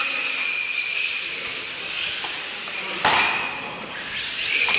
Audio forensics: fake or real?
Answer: real